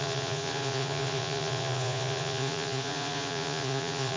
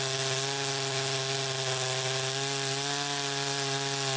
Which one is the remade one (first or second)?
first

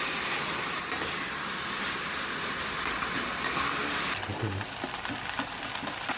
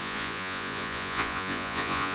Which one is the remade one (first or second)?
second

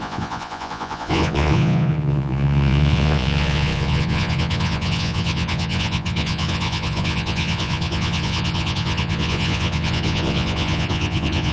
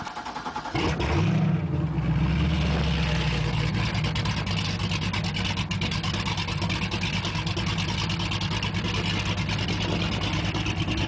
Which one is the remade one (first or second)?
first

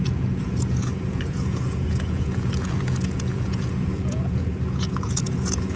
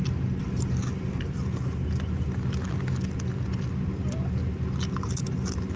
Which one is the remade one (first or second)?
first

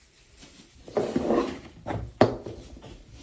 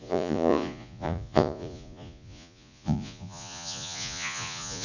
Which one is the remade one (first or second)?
second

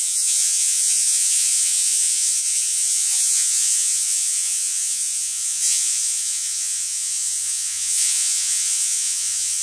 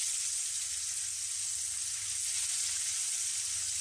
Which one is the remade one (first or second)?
first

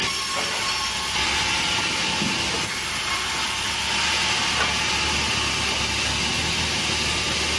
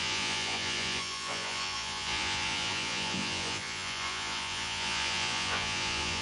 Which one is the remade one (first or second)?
second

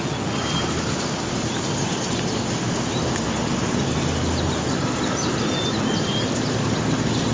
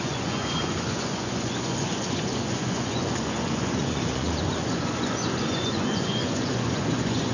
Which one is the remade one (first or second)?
second